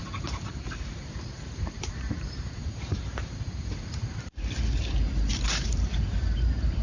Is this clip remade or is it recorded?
remade